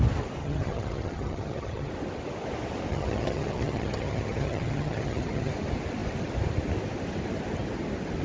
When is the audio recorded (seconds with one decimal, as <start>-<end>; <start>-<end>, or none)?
0.0-0.4; 1.9-2.9; 5.5-8.2